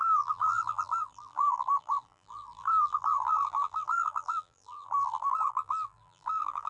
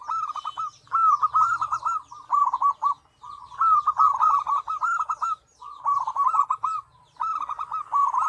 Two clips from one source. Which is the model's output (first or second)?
first